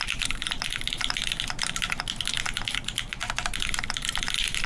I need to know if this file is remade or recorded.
recorded